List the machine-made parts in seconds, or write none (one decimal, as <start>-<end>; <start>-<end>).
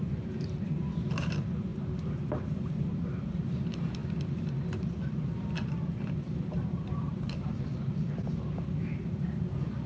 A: 0.0-4.0; 5.1-7.7